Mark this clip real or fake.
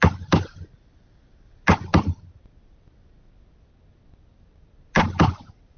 real